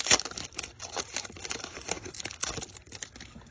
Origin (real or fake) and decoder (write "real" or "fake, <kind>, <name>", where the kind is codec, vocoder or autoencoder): real